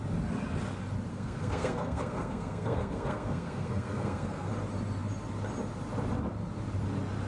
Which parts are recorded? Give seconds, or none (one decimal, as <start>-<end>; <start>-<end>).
0.0-1.1; 4.5-7.3